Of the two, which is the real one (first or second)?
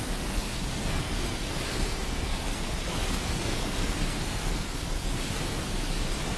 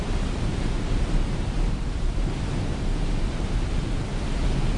second